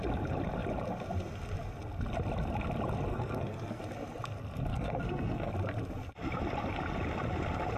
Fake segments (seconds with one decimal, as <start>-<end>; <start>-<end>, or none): 3.1-3.8; 4.7-5.5